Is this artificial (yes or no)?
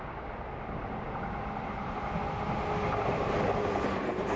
no